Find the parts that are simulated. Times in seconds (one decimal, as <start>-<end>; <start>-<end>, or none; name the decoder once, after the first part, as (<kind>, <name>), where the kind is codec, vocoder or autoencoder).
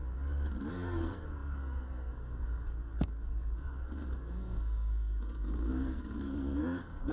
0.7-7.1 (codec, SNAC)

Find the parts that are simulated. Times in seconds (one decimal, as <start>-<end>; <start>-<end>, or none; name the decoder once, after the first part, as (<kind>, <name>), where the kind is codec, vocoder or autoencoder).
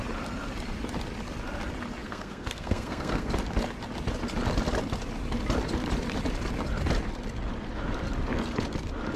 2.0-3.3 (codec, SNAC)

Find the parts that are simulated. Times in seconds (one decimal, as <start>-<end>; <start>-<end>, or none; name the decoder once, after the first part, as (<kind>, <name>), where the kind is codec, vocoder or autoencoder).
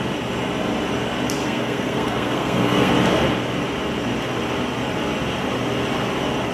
1.4-2.9 (codec, SNAC)